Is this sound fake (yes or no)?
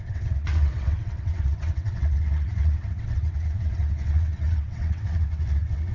yes